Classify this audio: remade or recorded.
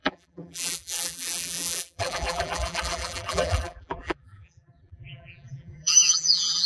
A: remade